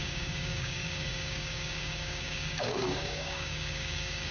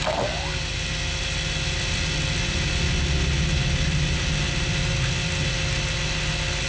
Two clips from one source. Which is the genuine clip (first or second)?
second